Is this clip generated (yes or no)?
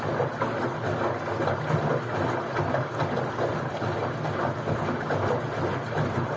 no